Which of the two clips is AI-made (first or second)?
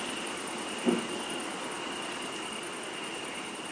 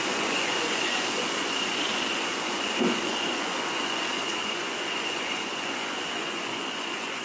second